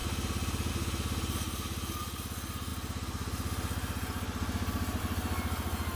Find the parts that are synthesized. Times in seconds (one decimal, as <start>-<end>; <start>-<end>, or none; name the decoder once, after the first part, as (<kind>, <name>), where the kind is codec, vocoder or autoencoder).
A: none